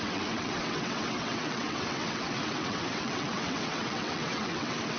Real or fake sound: fake